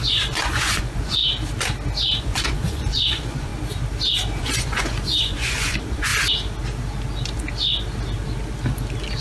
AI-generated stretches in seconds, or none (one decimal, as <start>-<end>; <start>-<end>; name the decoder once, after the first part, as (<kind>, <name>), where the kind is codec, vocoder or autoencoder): 0.0-1.2 (vocoder, Vocos); 2.2-3.5; 4.4-6.1